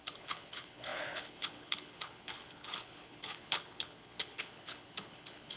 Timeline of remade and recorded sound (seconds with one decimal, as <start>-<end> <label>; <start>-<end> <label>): 0.0-5.6 remade